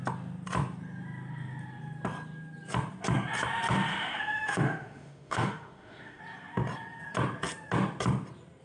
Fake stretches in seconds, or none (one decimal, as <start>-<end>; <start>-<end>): 3.9-6.2